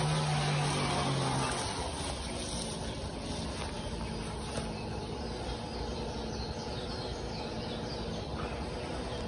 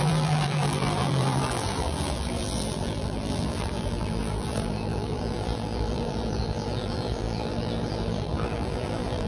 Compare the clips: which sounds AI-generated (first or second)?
second